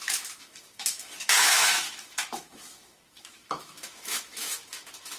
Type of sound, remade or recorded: remade